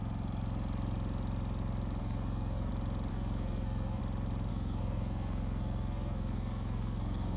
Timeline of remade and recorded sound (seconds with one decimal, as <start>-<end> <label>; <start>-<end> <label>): 0.0-2.0 recorded; 2.0-2.7 remade; 2.7-3.1 recorded; 3.1-4.0 remade; 4.0-4.5 recorded; 4.5-7.4 remade